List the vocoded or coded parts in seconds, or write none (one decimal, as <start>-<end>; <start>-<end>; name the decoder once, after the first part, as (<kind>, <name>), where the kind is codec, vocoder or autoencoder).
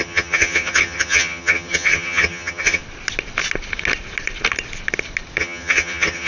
0.0-2.8 (vocoder, HiFi-GAN); 5.4-6.3